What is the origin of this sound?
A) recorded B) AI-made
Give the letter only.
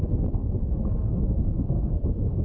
B